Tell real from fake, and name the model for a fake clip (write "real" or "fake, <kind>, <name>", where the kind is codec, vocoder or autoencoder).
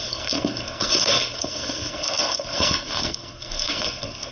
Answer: fake, codec, SNAC